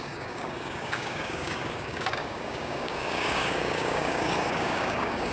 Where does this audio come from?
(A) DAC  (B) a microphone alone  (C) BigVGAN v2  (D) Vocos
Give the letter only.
A